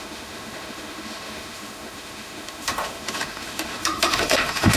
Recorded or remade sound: remade